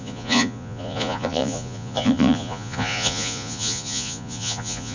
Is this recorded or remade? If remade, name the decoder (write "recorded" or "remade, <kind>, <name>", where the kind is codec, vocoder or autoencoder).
remade, vocoder, Vocos